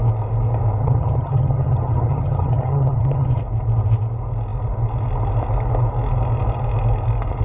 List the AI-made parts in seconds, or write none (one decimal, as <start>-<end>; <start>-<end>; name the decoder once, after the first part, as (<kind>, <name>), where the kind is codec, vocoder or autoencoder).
0.8-3.4 (vocoder, HiFi-GAN)